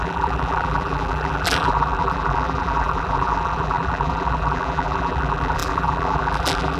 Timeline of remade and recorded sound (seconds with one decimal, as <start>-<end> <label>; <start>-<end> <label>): 0.0-6.8 remade